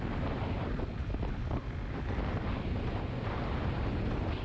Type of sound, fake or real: real